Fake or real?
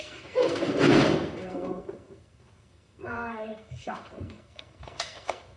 fake